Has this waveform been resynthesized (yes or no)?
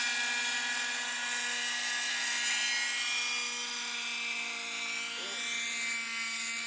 no